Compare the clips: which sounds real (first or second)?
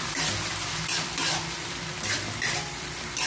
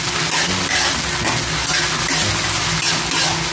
second